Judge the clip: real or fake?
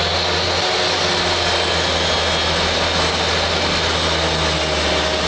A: real